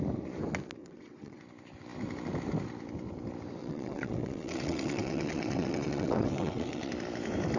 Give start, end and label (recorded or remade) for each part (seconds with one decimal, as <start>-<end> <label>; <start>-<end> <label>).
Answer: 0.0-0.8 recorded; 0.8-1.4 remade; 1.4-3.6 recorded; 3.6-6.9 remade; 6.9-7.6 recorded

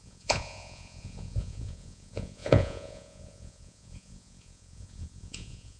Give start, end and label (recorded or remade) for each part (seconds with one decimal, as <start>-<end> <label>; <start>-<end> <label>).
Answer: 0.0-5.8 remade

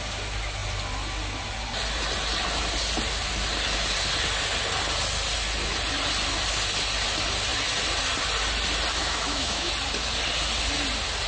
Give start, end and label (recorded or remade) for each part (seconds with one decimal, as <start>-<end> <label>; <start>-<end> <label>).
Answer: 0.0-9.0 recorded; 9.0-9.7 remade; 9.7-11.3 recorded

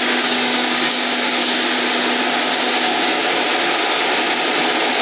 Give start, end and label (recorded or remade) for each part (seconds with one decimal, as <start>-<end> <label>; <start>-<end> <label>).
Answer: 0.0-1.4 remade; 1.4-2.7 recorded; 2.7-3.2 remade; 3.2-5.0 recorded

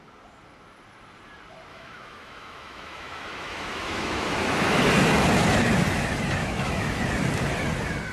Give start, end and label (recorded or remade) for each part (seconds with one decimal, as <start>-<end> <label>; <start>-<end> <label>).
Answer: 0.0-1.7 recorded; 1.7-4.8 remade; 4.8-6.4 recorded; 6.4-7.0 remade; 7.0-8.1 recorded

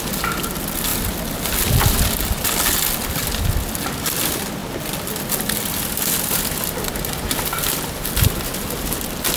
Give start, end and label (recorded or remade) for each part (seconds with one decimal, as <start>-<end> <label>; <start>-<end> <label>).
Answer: 0.0-0.9 recorded; 0.9-1.6 remade; 1.6-9.4 recorded